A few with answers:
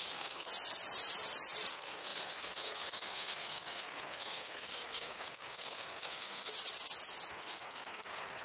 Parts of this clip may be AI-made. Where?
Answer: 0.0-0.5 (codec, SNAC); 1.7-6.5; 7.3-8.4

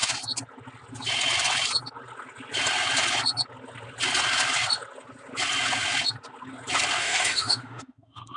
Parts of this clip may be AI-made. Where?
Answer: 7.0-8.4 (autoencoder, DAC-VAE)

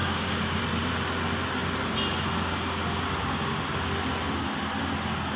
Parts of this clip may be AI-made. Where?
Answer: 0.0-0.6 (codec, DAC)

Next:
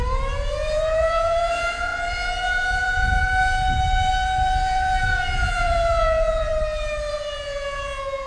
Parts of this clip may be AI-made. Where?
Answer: 0.0-6.5 (vocoder, Vocos); 7.1-8.3

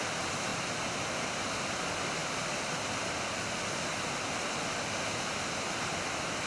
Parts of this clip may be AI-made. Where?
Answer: none